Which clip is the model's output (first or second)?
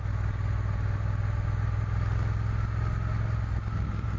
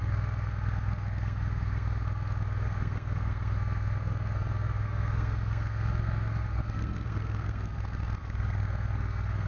second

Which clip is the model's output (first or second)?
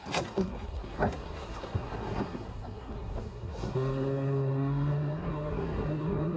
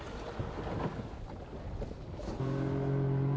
first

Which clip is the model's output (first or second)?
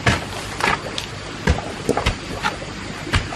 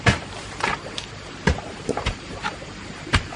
second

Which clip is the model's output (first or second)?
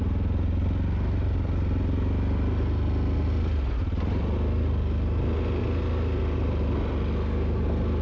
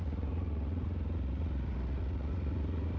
second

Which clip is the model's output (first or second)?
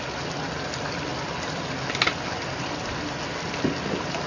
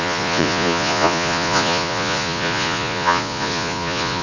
second